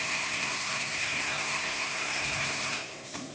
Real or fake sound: fake